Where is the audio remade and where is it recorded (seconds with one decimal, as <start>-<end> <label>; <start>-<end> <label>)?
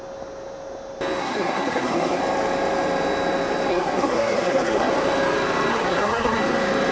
0.0-1.2 recorded; 1.2-2.2 remade; 2.2-3.7 recorded; 3.7-4.9 remade; 4.9-5.7 recorded; 5.7-6.4 remade; 6.4-6.9 recorded